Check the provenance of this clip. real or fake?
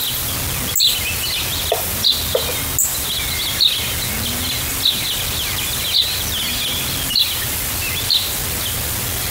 real